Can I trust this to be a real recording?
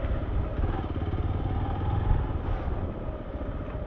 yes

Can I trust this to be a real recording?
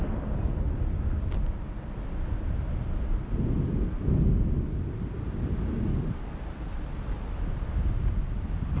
yes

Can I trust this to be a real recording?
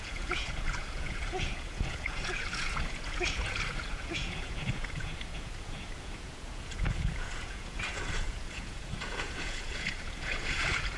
no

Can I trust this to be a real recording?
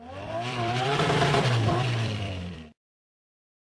no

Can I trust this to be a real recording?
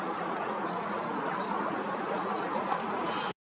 no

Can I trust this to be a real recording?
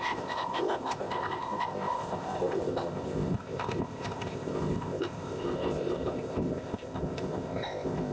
no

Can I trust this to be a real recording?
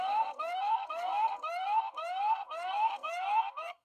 no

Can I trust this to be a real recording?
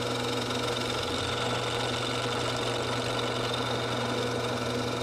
yes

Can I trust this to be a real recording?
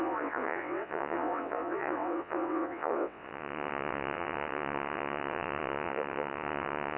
no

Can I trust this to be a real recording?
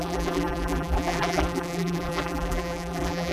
no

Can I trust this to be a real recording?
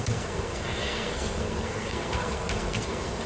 no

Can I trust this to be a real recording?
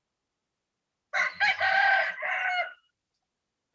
yes